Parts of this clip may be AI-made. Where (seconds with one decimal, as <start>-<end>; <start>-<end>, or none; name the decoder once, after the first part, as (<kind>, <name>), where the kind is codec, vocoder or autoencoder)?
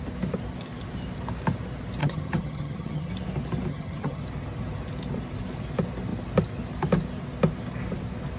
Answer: 2.0-3.1 (vocoder, HiFi-GAN); 3.7-4.2